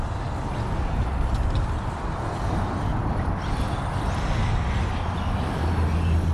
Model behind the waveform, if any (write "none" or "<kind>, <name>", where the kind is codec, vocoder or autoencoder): none